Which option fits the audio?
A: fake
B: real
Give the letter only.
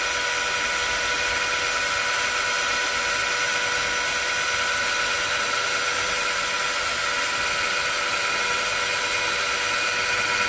B